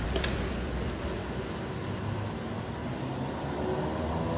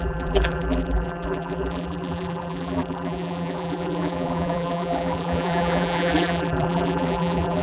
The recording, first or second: first